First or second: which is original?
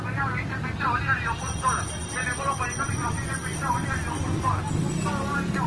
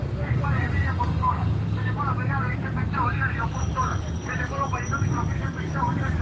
first